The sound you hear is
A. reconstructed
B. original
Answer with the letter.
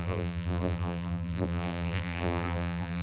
A